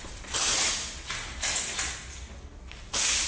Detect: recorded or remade recorded